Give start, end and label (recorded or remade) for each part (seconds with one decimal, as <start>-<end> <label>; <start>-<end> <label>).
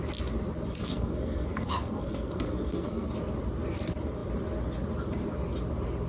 0.0-0.8 recorded; 0.8-3.1 remade; 3.1-6.1 recorded